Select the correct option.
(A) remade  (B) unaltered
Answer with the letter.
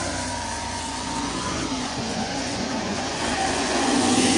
A